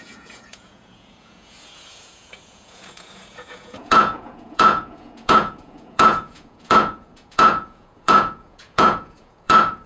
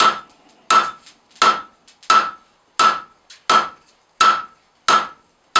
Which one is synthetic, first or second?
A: first